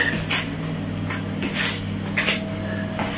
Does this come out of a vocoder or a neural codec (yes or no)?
no